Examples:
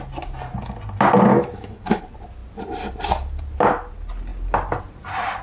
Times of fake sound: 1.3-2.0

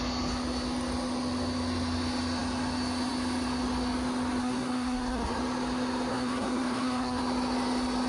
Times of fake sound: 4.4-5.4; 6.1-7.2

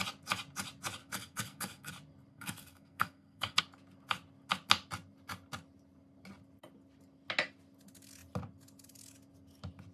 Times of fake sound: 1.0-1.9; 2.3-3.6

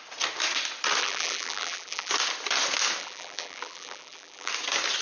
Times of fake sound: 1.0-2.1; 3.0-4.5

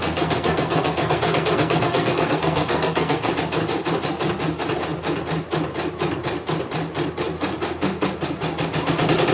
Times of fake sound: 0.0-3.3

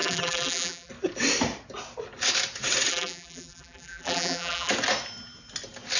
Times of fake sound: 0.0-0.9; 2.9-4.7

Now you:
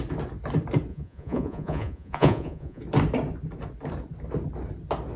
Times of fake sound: 0.9-2.8

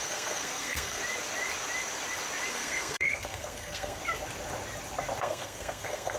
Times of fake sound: 0.0-1.0; 2.5-4.0; 5.2-6.2